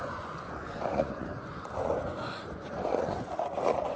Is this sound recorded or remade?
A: remade